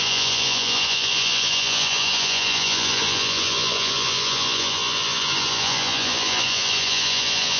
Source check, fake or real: fake